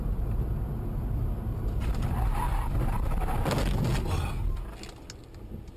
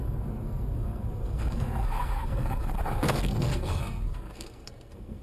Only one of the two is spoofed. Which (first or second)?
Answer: second